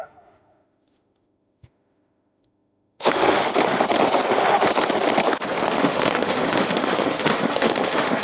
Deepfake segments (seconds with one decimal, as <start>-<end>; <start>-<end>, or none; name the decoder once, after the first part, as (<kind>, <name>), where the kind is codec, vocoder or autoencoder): 0.0-3.5 (autoencoder, DAC-VAE); 5.7-8.2